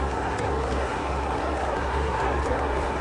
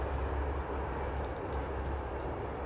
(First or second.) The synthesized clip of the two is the first